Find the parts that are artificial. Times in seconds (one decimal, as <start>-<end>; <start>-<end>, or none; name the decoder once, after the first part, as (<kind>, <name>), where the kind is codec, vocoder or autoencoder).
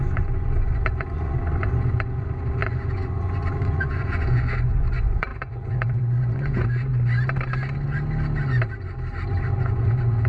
0.0-6.9 (vocoder, Vocos); 9.6-10.3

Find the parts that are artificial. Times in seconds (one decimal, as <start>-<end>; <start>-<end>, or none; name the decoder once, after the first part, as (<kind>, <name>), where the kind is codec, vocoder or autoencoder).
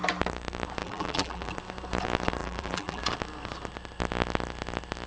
0.8-1.5 (vocoder, BigVGAN v2); 2.4-3.0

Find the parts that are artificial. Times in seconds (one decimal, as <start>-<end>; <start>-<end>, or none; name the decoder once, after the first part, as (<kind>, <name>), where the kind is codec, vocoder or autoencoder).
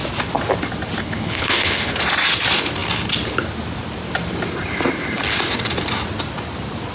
1.0-1.9 (codec, HILCodec)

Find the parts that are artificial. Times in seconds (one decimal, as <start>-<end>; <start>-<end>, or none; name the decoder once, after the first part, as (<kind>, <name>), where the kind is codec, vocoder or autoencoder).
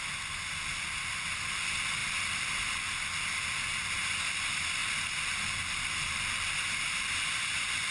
none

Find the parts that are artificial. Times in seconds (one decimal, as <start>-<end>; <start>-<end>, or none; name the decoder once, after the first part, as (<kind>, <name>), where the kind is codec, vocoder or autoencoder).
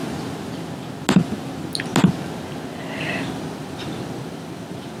3.0-5.0 (vocoder, BigVGAN v2)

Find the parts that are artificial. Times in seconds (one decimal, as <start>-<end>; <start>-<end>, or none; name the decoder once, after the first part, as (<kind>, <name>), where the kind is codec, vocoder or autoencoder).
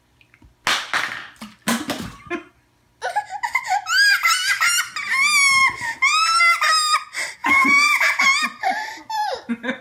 7.4-8.2 (vocoder, Vocos)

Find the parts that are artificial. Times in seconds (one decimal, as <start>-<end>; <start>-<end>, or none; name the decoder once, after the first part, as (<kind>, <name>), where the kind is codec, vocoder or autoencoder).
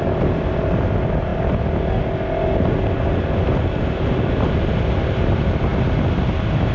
none